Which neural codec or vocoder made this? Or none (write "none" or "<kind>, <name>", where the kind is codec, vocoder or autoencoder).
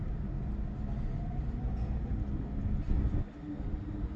none